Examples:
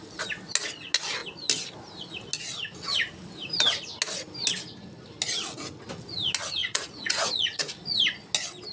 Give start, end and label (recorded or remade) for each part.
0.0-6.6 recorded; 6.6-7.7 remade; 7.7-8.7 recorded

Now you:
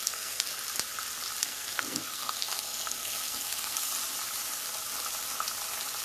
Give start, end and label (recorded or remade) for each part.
0.0-0.5 remade; 0.5-1.4 recorded; 1.4-3.9 remade; 3.9-6.0 recorded